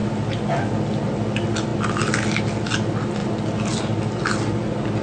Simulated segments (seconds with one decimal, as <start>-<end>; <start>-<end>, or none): none